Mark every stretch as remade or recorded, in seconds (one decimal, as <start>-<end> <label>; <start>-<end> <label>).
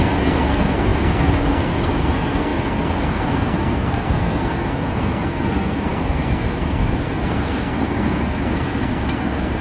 0.0-9.6 remade